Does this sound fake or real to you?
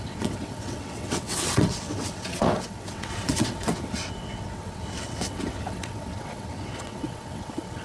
fake